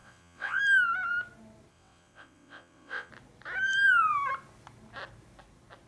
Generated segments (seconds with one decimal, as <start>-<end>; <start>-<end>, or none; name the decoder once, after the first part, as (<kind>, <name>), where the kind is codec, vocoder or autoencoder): 0.0-0.6 (vocoder, WaveNeXt); 1.7-3.1